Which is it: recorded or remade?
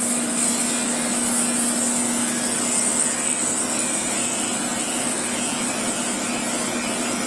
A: recorded